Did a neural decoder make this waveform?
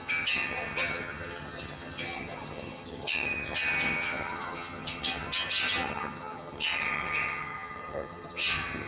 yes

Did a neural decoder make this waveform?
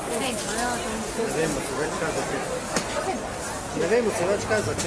no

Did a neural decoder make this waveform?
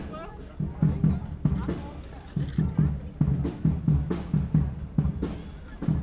no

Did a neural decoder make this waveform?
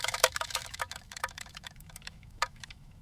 yes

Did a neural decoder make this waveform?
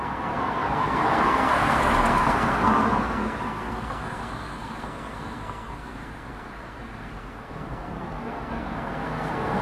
yes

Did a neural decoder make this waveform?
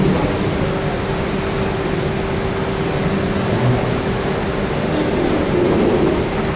no